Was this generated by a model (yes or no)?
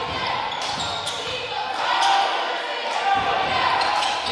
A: no